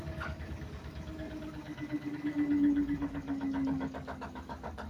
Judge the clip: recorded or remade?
remade